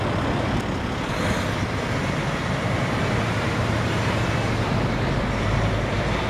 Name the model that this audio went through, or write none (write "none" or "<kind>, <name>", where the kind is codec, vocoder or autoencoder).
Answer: none